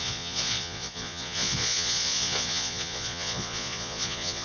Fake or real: fake